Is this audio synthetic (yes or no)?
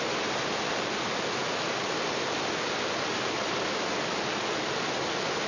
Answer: no